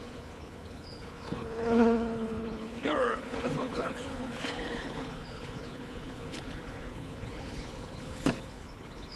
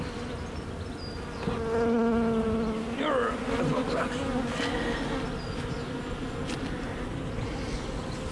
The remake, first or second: first